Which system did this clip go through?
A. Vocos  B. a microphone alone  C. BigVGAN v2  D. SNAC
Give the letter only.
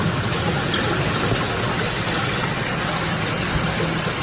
B